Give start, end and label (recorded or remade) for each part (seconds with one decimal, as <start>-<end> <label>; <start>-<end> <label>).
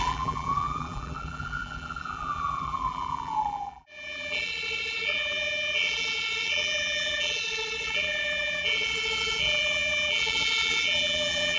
0.0-11.6 remade